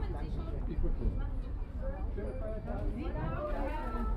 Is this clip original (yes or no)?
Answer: yes